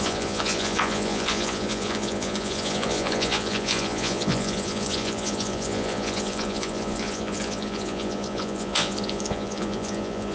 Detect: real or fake fake